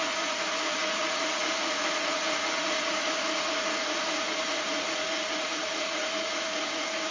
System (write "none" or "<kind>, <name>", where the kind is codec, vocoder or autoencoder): vocoder, Vocos